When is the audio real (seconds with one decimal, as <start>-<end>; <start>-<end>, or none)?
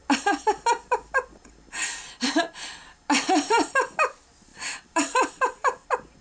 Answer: 1.4-1.9; 3.9-4.5